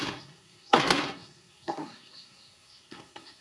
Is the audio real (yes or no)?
no